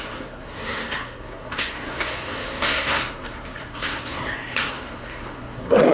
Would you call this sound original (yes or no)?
no